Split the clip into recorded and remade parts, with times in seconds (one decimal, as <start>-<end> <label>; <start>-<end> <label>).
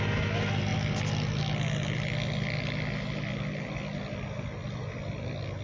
0.0-5.6 recorded